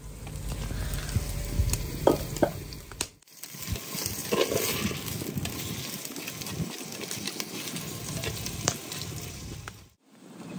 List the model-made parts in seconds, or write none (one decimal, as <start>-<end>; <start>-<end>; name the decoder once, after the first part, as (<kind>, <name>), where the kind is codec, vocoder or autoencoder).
none